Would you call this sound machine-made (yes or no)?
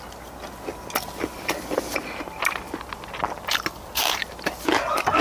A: no